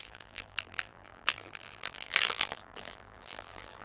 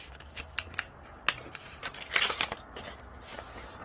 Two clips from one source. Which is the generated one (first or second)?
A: first